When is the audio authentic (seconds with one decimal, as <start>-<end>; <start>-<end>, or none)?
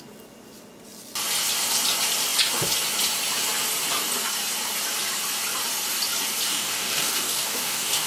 0.0-6.5